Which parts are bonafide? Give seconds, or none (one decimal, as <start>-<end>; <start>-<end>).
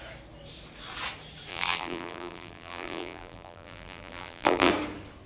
0.0-1.5; 4.7-5.3